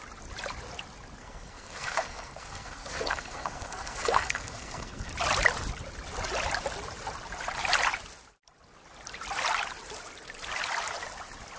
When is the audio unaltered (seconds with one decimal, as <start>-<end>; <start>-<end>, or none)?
0.0-1.2; 5.1-11.6